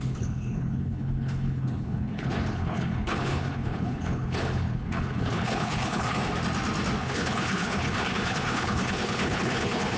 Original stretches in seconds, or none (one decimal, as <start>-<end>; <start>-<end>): 6.2-7.0